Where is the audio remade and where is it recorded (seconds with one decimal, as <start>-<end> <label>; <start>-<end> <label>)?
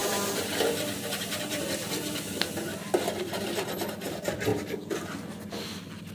0.0-2.5 remade; 2.5-4.5 recorded; 4.5-5.0 remade; 5.0-6.1 recorded